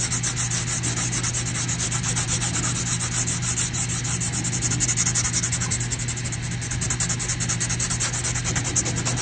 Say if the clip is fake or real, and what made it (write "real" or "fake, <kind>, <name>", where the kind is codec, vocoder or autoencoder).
real